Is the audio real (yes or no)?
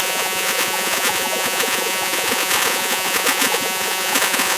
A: no